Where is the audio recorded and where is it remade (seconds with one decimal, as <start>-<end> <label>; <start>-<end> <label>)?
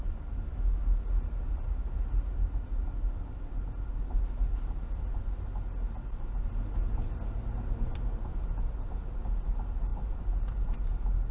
0.0-11.3 recorded